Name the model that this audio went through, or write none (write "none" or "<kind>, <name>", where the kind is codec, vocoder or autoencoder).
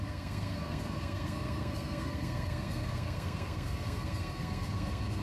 codec, SNAC